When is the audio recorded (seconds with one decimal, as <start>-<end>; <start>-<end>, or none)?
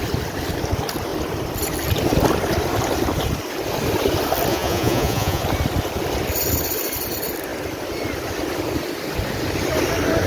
0.0-4.5; 5.4-10.3